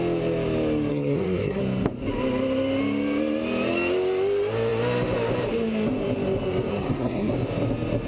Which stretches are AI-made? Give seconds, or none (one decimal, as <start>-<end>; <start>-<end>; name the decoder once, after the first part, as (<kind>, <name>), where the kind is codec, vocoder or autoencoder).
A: 0.9-1.6 (codec, SNAC); 6.7-7.3